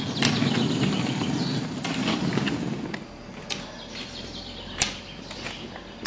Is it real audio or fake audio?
real